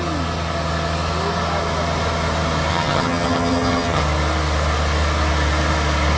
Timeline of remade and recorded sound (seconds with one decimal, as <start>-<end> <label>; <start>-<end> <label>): 0.0-2.7 recorded; 2.7-4.0 remade; 4.0-6.2 recorded